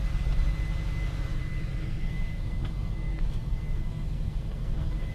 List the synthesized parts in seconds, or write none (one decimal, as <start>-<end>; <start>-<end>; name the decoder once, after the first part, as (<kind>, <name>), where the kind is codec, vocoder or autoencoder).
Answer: 1.8-5.1 (codec, SNAC)